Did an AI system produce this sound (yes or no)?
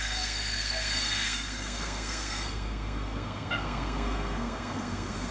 yes